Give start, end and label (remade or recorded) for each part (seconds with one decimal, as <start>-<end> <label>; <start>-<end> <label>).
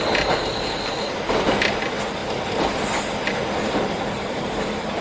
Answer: 0.0-3.4 recorded; 3.4-5.0 remade